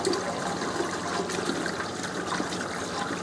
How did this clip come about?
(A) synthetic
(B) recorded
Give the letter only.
B